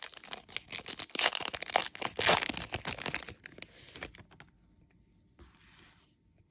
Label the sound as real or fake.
real